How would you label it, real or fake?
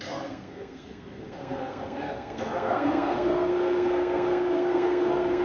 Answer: fake